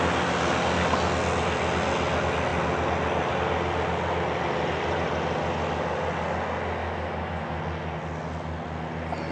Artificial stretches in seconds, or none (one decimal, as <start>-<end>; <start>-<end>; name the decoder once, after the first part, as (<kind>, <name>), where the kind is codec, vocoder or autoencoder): 6.8-7.6 (autoencoder, DAC-VAE)